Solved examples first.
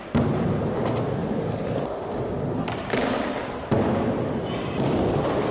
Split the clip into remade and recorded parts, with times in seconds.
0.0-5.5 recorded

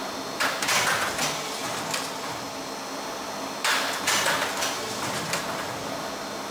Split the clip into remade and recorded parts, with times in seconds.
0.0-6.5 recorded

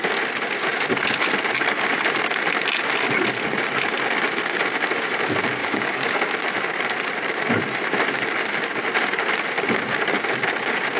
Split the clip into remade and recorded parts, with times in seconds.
0.0-5.6 recorded; 5.6-6.2 remade; 6.2-11.0 recorded

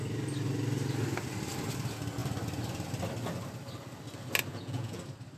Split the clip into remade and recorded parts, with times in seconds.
0.0-4.5 recorded; 4.5-5.0 remade; 5.0-5.4 recorded